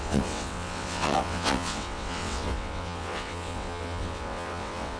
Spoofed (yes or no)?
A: yes